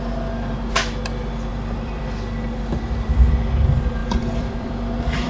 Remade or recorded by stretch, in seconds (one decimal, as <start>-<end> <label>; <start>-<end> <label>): 0.0-1.5 recorded; 1.5-3.3 remade; 3.3-4.0 recorded; 4.0-5.3 remade